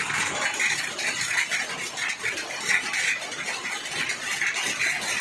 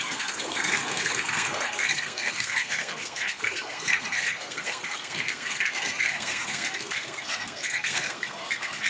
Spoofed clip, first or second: second